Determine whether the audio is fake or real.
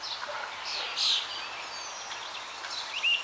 real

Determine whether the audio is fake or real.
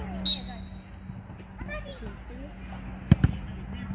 real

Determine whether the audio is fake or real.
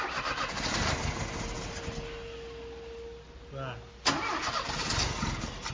real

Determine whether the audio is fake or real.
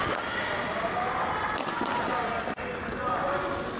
real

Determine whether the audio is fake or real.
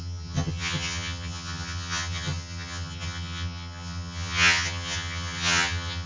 fake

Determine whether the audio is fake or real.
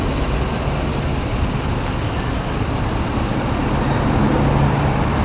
real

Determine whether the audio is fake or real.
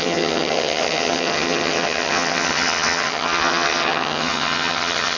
fake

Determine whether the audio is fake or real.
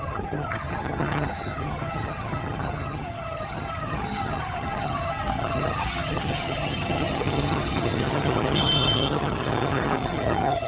fake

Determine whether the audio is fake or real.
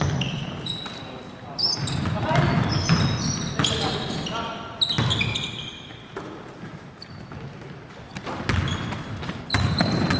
real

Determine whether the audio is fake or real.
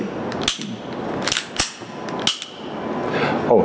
real